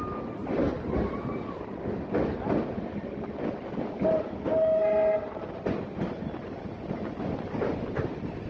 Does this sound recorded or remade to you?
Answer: recorded